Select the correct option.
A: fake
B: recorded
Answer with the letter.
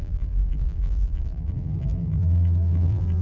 A